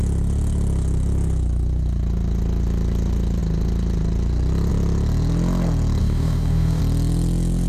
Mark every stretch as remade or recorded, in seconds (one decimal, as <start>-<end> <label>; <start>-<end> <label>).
0.0-6.0 recorded; 6.0-6.8 remade; 6.8-7.7 recorded